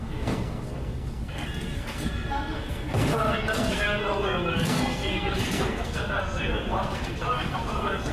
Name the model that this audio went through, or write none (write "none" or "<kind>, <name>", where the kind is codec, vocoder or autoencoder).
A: codec, SNAC